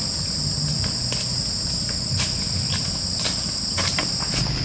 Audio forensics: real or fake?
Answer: real